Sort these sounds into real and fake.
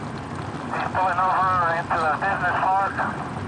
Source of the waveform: real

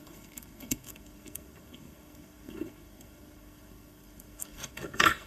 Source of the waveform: fake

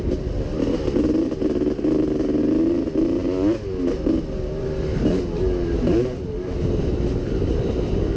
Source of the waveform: real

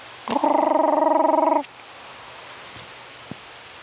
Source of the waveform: real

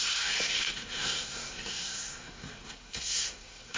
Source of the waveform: fake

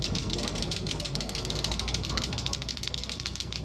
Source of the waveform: fake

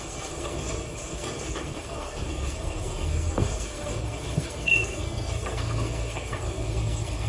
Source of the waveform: fake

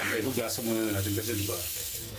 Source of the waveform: fake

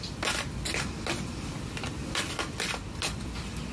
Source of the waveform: real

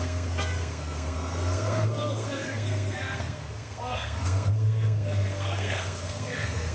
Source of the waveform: fake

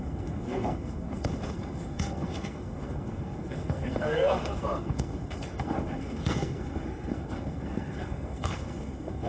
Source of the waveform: fake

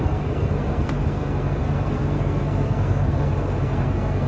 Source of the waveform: fake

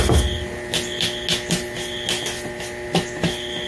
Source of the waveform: real